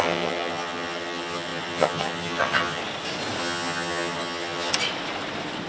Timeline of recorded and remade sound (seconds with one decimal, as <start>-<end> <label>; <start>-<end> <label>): 0.0-2.8 remade; 2.8-3.4 recorded; 3.4-4.7 remade; 4.7-5.7 recorded